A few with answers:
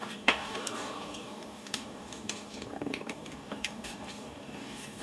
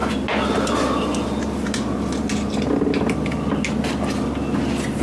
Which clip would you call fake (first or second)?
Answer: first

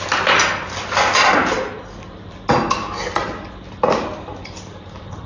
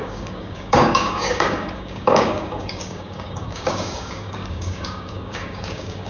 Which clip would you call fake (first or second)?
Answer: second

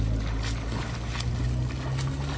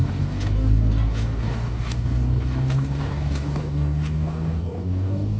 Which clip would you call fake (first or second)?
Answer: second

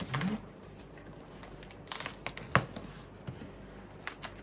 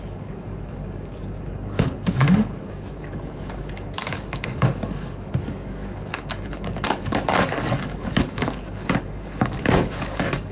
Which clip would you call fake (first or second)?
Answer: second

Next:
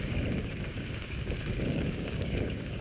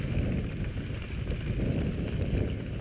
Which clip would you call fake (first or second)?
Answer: first